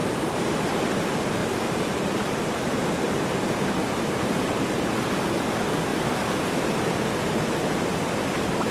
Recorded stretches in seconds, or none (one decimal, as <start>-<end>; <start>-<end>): 0.8-1.4; 5.3-5.9; 7.0-8.7